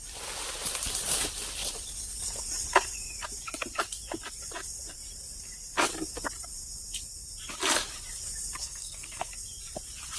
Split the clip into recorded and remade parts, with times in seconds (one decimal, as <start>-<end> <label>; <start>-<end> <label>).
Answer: 0.0-8.6 recorded; 8.6-9.3 remade; 9.3-10.2 recorded